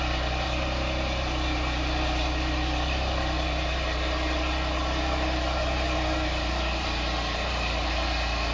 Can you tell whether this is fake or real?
fake